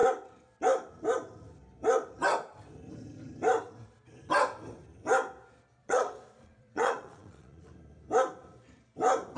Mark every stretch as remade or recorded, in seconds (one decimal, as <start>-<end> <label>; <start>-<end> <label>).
0.0-5.7 recorded; 5.7-7.7 remade; 7.7-9.4 recorded